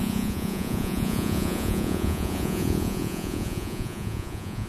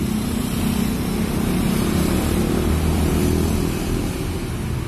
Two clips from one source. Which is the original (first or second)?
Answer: second